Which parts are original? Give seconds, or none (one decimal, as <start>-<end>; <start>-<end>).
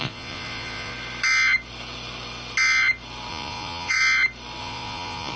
0.9-3.3; 4.0-4.6